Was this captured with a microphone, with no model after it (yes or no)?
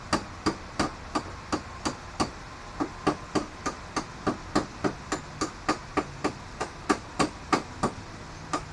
yes